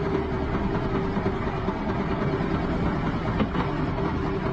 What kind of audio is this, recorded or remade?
recorded